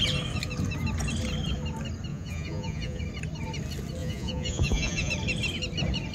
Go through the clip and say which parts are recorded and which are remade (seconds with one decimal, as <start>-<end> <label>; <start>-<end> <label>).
0.0-2.1 recorded; 2.1-3.0 remade; 3.0-4.0 recorded; 4.0-5.1 remade; 5.1-6.1 recorded